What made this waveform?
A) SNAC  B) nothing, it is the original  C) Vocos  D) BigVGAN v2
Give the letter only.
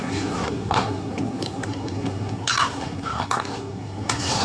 A